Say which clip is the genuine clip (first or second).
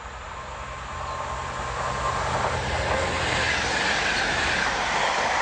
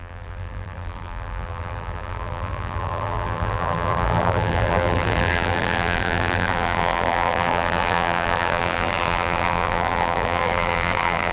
first